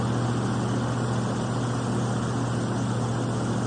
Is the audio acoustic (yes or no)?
yes